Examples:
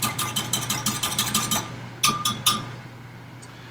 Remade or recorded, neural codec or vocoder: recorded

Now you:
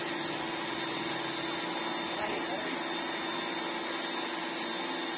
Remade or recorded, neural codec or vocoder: recorded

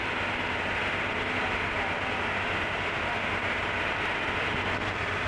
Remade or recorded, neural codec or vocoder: recorded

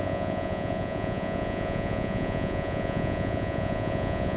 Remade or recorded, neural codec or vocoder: remade, vocoder, Vocos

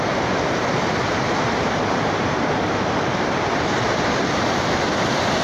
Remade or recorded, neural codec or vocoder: remade, vocoder, BigVGAN v2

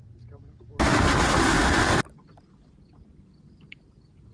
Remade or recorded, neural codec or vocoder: recorded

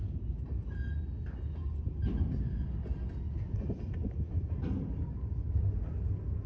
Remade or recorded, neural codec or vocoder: recorded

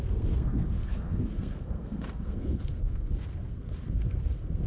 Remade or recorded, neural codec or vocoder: remade, codec, SNAC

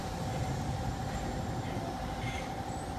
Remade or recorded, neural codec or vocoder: recorded